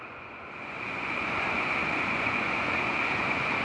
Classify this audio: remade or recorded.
remade